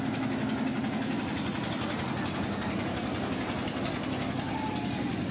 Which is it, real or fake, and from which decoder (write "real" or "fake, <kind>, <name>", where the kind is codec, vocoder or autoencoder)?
real